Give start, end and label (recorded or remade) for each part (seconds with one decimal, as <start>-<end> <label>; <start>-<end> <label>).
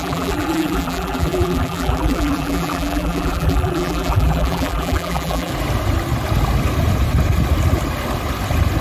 0.0-5.5 remade; 5.5-8.8 recorded